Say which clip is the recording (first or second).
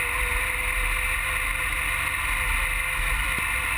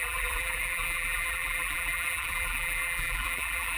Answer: first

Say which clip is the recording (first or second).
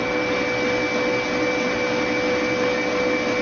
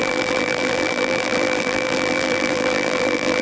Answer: first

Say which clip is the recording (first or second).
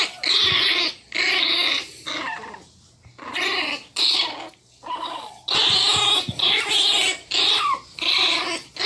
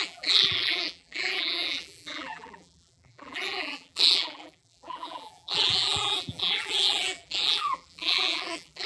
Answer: first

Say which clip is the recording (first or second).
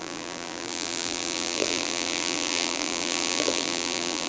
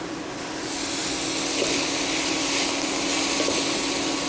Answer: second